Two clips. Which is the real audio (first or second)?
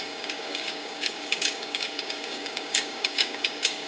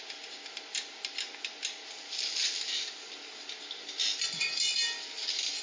second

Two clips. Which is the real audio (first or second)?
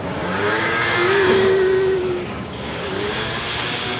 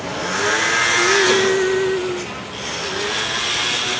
second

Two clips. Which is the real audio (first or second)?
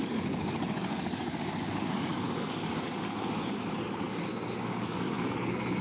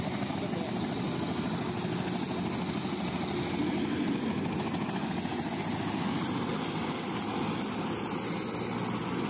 second